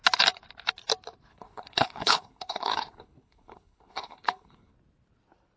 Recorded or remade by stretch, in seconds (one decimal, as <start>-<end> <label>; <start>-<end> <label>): 0.0-1.3 recorded; 1.3-4.7 remade; 4.7-5.6 recorded